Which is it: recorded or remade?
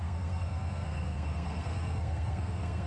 remade